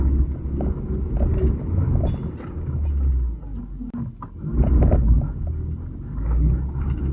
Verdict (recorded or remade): recorded